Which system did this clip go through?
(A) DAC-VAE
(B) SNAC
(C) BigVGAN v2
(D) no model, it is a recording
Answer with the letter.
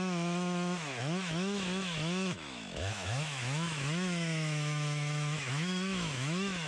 A